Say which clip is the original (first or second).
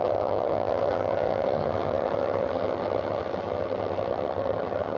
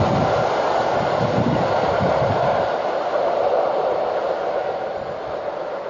second